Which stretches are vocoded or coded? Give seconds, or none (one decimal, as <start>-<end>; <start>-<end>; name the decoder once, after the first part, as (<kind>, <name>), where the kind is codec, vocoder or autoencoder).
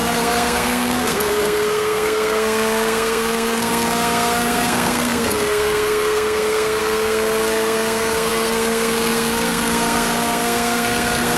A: 0.0-11.4 (codec, SNAC)